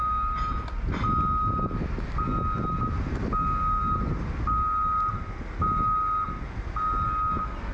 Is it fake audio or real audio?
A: real